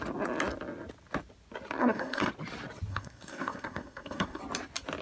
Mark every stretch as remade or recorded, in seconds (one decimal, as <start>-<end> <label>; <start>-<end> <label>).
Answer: 0.0-1.8 recorded; 1.8-2.3 remade; 2.3-2.9 recorded; 2.9-4.4 remade; 4.4-5.0 recorded